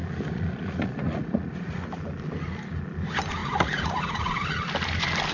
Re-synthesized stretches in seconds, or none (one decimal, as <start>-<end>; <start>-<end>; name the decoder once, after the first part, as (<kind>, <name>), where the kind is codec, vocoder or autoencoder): 0.0-1.9 (vocoder, Vocos); 3.4-4.6